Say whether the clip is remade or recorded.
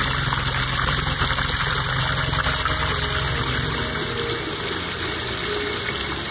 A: recorded